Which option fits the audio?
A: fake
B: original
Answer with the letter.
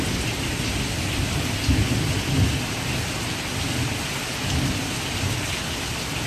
B